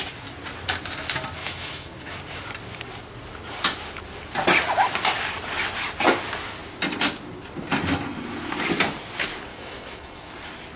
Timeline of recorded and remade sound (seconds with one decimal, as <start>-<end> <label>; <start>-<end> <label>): 0.0-1.4 recorded; 1.4-2.1 remade; 2.1-9.5 recorded; 9.5-10.3 remade; 10.3-10.8 recorded